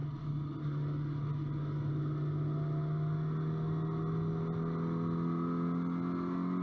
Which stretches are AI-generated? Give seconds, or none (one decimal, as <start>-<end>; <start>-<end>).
none

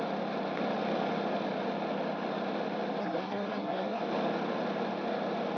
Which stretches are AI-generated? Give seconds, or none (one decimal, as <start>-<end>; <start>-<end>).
3.0-4.0

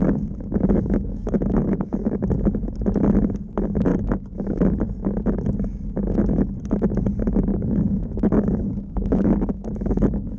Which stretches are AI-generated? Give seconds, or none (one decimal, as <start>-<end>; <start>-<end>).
0.0-2.3; 3.9-4.7; 7.5-10.4

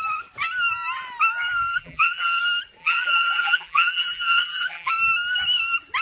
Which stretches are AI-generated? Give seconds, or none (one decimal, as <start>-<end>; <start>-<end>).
1.7-2.4; 2.8-4.9

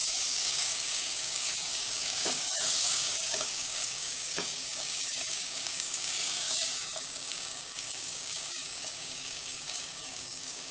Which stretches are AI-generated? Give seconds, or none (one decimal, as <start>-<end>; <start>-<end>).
0.0-10.7

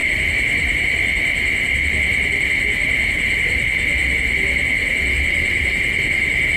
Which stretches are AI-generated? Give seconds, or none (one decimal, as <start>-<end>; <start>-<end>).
0.0-1.9